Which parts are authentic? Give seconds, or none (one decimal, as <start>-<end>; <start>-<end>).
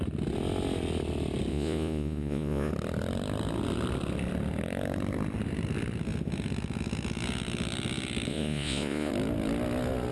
0.0-1.5; 2.7-8.3; 9.1-10.1